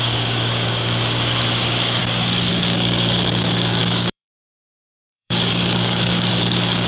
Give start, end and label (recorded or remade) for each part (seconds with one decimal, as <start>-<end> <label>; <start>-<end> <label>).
0.0-2.0 remade; 2.0-2.5 recorded; 2.5-6.9 remade